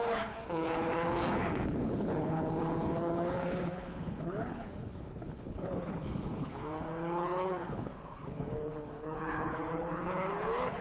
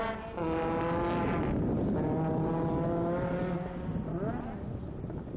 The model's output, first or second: first